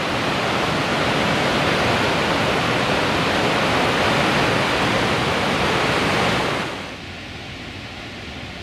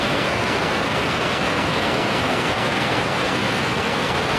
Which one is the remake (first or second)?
second